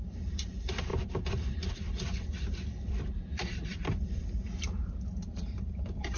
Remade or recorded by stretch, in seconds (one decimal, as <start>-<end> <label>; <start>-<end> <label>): 0.0-4.4 remade; 4.4-5.3 recorded; 5.3-6.2 remade